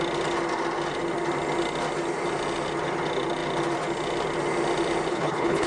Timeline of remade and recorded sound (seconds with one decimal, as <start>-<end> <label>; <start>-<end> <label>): 0.0-5.1 recorded; 5.1-5.7 remade

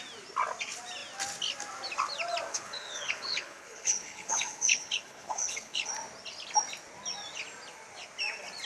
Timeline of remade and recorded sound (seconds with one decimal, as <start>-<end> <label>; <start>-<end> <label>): 0.0-2.5 recorded; 2.5-5.9 remade; 5.9-8.7 recorded